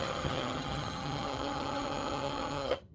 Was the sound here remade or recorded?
remade